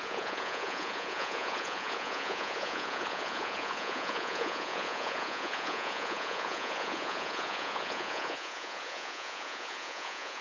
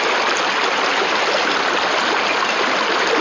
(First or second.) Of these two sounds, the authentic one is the second